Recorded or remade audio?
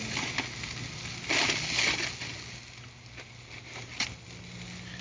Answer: recorded